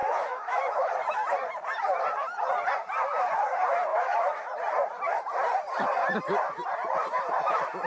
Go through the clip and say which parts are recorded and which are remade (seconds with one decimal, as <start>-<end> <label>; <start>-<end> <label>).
0.0-0.9 remade; 0.9-3.9 recorded; 3.9-4.5 remade; 4.5-7.9 recorded